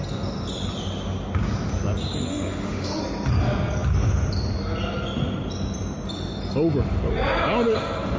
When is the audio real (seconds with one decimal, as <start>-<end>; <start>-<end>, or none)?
0.0-2.3; 3.0-8.2